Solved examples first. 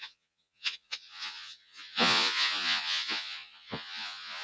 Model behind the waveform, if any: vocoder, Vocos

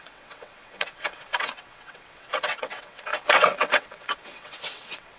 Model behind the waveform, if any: vocoder, WaveNeXt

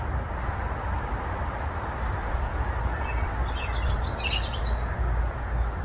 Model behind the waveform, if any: none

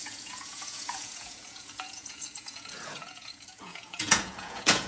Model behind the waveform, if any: vocoder, Vocos